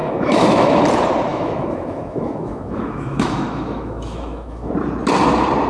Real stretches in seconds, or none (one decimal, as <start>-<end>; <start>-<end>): 0.8-1.3; 4.7-5.7